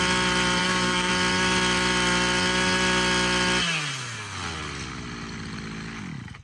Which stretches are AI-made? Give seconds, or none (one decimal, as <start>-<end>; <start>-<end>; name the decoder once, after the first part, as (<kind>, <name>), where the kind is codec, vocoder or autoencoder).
0.6-1.1 (codec, SNAC)